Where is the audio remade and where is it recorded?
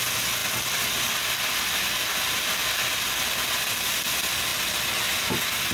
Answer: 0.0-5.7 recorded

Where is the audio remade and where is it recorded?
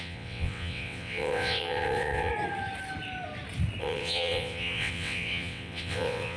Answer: 0.0-2.3 remade; 2.3-3.8 recorded; 3.8-6.4 remade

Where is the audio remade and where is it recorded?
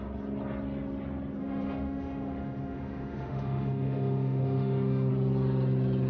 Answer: 0.0-1.4 recorded; 1.4-5.1 remade; 5.1-6.1 recorded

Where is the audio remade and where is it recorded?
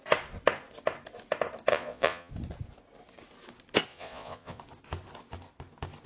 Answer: 0.0-1.7 recorded; 1.7-2.3 remade; 2.3-3.9 recorded; 3.9-4.6 remade; 4.6-6.1 recorded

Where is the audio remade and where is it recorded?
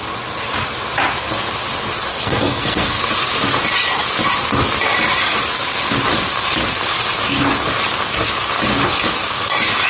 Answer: 0.0-2.1 recorded; 2.1-3.0 remade; 3.0-9.9 recorded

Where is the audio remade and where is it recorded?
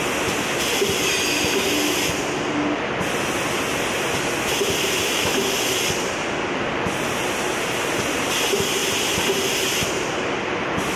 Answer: 0.0-11.0 recorded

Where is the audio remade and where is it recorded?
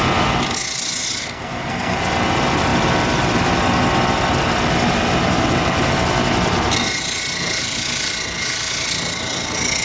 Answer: 0.0-1.2 recorded; 1.2-2.0 remade; 2.0-9.8 recorded